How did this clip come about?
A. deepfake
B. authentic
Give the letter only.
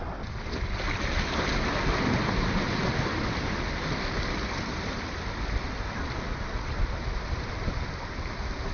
B